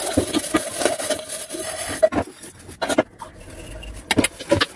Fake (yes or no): no